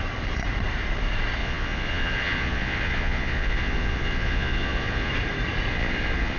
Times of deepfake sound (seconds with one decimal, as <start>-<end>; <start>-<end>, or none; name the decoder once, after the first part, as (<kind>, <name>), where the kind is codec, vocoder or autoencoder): 1.4-5.1 (vocoder, Vocos); 5.7-6.4